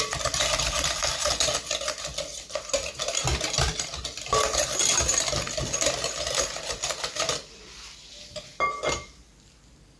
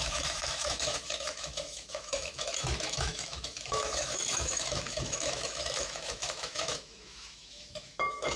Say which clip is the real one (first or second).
first